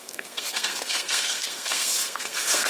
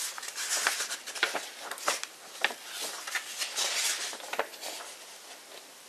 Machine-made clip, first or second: first